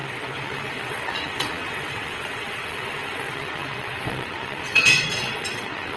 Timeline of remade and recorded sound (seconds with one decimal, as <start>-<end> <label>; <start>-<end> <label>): 0.0-6.0 remade